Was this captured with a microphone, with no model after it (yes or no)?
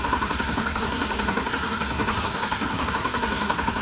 no